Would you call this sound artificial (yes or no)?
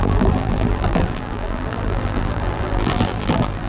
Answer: yes